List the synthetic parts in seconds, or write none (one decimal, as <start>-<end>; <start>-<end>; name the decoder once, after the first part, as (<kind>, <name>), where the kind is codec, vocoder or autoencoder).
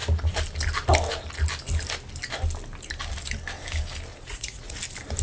4.1-4.8 (vocoder, Vocos)